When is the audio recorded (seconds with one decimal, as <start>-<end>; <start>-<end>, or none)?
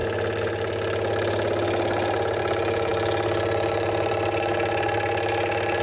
0.0-5.8